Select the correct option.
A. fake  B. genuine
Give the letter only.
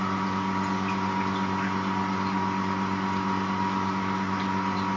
B